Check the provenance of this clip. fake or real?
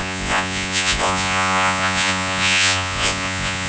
fake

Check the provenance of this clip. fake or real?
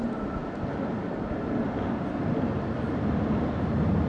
real